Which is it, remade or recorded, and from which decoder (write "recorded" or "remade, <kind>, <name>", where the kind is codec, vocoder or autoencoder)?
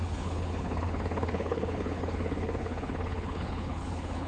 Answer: remade, codec, HILCodec